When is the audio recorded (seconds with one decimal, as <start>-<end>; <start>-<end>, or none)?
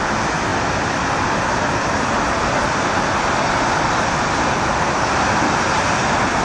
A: 0.0-6.4